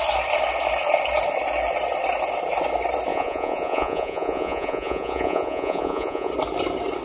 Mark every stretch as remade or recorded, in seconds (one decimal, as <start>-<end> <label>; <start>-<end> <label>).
0.0-3.1 recorded; 3.1-6.3 remade; 6.3-7.0 recorded